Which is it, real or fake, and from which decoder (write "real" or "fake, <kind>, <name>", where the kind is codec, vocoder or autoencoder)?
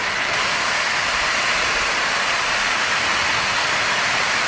real